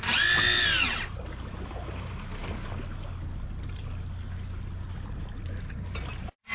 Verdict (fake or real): real